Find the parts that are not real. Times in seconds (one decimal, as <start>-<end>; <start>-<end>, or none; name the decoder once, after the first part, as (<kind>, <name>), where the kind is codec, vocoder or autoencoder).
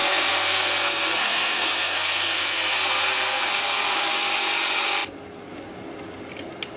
0.0-4.1 (codec, SNAC)